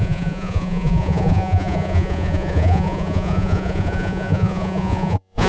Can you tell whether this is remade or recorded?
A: remade